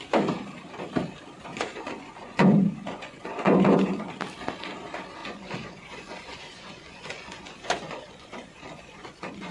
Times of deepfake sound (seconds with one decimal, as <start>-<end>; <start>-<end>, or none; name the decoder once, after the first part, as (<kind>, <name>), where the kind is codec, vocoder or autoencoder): 1.5-4.1 (vocoder, Vocos); 5.2-9.5